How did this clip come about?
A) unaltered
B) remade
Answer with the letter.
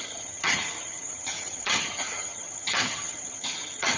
B